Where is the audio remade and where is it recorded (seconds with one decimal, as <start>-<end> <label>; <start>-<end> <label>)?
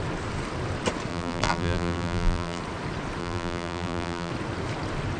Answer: 0.0-1.1 recorded; 1.1-2.6 remade; 2.6-3.2 recorded; 3.2-4.3 remade; 4.3-5.2 recorded